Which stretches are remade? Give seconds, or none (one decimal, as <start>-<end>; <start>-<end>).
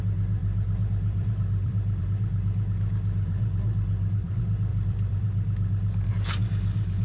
0.4-2.0; 4.7-6.1